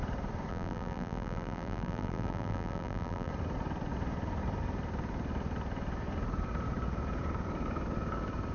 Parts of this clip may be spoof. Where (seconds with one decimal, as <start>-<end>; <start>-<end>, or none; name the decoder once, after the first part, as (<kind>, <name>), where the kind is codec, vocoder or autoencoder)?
0.5-3.3 (vocoder, BigVGAN v2)